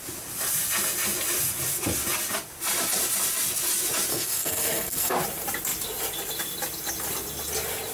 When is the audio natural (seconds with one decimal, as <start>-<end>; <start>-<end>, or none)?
0.0-4.1; 5.1-7.9